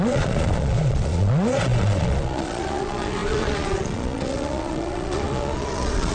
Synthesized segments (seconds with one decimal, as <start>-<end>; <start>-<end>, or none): 0.0-6.1